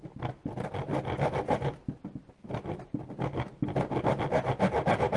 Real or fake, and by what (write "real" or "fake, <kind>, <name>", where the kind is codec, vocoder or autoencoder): real